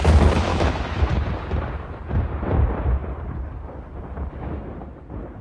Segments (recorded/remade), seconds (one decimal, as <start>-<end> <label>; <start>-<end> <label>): 0.0-0.5 recorded; 0.5-1.1 remade; 1.1-5.4 recorded